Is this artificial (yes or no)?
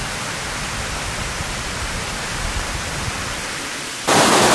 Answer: yes